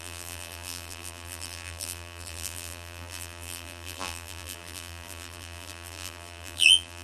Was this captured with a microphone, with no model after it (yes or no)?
no